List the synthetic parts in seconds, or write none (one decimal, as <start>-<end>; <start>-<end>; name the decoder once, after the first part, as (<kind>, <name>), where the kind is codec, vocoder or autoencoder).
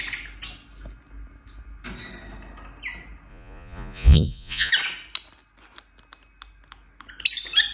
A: 3.3-4.7 (vocoder, Vocos)